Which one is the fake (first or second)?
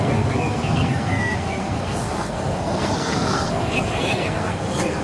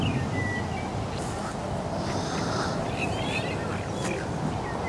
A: first